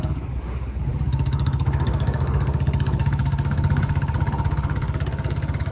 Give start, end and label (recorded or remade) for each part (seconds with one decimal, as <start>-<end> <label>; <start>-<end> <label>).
0.0-5.7 remade